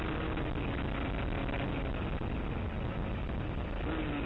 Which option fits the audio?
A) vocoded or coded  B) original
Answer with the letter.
B